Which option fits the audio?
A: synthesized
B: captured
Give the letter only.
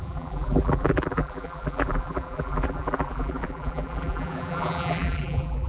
A